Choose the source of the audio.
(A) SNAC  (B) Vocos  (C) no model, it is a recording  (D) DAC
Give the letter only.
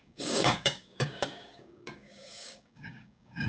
D